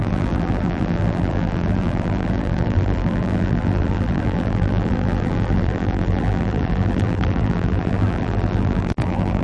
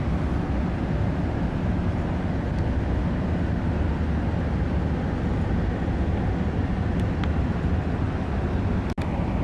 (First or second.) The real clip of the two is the second